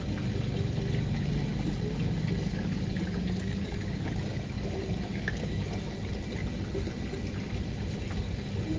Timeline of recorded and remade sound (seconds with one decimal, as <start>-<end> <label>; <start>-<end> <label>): 0.0-2.5 recorded; 2.5-5.8 remade; 5.8-8.8 recorded

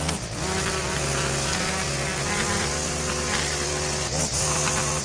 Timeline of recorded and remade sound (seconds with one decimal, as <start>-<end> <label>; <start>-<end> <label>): 0.0-5.0 recorded

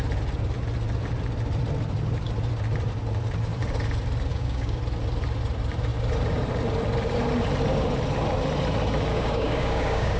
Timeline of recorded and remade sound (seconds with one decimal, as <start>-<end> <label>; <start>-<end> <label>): 0.0-4.3 recorded; 4.3-4.8 remade; 4.8-9.1 recorded; 9.1-10.2 remade

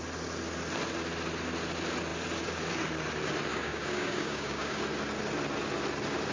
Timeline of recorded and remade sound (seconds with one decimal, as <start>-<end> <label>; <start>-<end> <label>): 0.0-3.5 recorded; 3.5-4.8 remade; 4.8-6.3 recorded

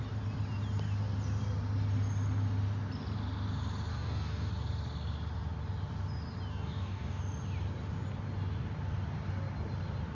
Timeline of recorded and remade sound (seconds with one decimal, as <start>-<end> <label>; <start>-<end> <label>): 0.0-3.9 recorded; 3.9-4.5 remade; 4.5-6.5 recorded; 6.5-7.2 remade; 7.2-10.1 recorded